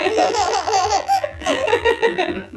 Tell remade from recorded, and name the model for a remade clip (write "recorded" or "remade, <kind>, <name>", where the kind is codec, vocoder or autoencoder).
remade, vocoder, BigVGAN v2